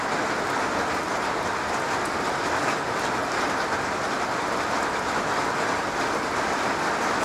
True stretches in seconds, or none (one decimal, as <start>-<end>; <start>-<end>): 0.0-7.2